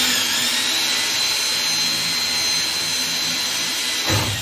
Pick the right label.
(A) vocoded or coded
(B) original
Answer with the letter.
B